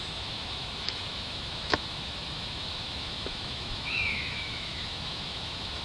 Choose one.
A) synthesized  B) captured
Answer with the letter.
A